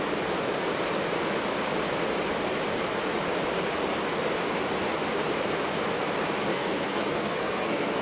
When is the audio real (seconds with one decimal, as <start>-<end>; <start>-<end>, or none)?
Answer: 0.0-6.5

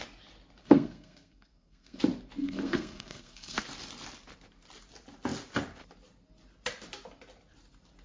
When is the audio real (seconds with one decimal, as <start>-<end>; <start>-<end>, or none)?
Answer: 0.0-0.6; 2.0-2.4; 3.6-8.0

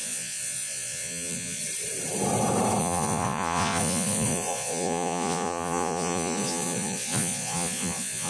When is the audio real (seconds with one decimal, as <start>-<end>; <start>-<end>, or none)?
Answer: 1.6-2.8

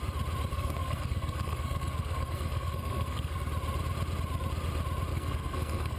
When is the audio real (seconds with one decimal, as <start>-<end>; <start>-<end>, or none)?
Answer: 0.0-0.5; 3.5-5.1

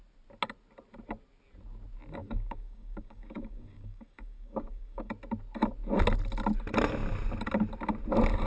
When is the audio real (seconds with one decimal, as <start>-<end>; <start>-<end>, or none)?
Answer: 0.0-2.2; 5.1-8.5

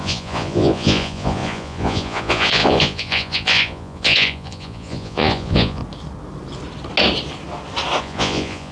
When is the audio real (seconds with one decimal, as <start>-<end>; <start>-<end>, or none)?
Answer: 5.8-8.0

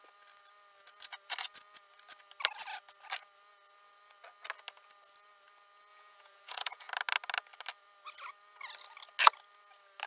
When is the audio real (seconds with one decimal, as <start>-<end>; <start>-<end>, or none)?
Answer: 0.0-5.9; 6.9-10.1

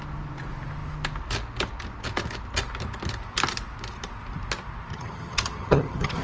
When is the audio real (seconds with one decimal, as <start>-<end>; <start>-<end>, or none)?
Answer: 0.0-4.9